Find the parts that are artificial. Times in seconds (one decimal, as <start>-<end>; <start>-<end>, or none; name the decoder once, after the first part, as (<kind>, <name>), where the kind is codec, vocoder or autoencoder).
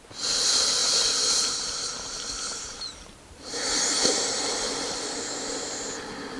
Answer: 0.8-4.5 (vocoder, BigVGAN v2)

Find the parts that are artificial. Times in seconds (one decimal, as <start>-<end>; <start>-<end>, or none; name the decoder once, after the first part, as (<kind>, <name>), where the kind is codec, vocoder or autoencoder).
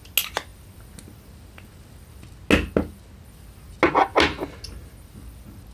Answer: none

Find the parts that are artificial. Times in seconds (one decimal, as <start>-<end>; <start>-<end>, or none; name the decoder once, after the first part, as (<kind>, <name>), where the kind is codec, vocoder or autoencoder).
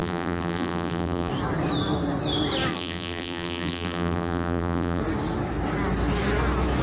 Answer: 0.0-1.3 (vocoder, BigVGAN v2); 2.7-5.0